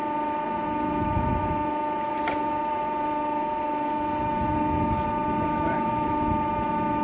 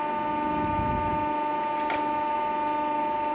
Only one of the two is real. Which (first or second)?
second